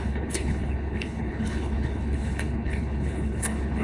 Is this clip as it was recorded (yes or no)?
no